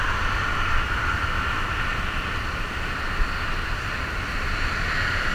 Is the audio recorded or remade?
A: recorded